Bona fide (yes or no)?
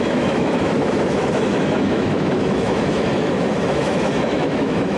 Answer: no